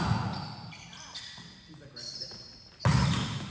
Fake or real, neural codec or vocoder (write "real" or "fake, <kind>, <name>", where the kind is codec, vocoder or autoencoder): real